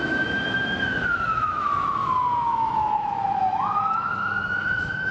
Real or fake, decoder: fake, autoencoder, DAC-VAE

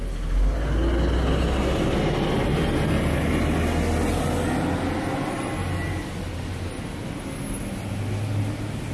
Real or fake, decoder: real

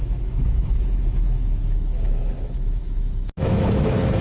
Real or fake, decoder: fake, autoencoder, DAC-VAE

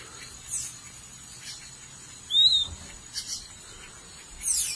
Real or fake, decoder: real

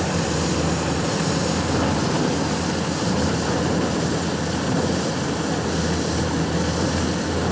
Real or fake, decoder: real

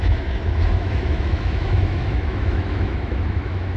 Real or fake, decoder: fake, autoencoder, DAC-VAE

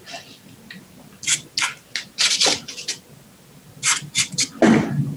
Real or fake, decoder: real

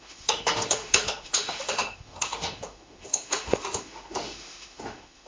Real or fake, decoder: fake, autoencoder, DAC-VAE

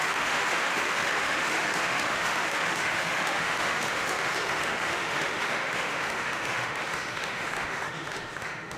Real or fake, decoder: fake, autoencoder, DAC-VAE